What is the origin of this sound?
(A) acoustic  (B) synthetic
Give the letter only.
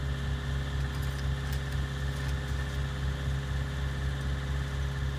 A